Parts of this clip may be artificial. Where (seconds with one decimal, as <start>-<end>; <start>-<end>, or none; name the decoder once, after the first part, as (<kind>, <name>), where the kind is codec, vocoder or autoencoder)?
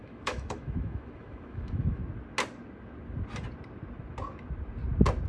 0.0-2.0 (autoencoder, DAC-VAE)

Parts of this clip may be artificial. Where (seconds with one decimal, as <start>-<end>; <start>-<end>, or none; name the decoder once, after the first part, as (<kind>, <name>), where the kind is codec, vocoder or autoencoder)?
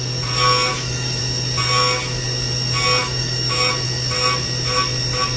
0.7-1.2 (autoencoder, DAC-VAE); 3.0-3.7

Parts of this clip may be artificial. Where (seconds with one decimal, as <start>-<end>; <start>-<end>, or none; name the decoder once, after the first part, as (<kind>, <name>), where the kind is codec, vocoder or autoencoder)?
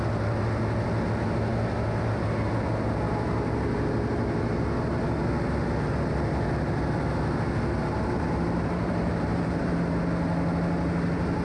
7.8-9.8 (vocoder, BigVGAN v2)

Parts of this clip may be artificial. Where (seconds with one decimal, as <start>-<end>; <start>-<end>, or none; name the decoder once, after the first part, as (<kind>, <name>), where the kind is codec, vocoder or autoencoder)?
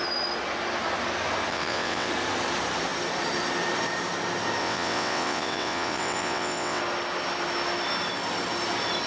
1.5-2.1 (vocoder, WaveNeXt); 4.6-6.8